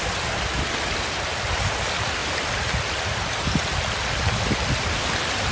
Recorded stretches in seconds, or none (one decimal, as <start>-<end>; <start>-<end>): 0.0-5.5